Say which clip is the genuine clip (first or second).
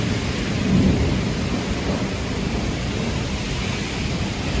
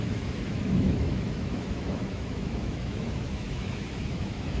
first